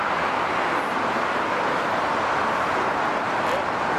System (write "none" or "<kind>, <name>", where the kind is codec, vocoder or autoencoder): none